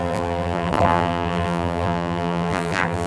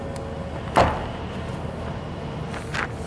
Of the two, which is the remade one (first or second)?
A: first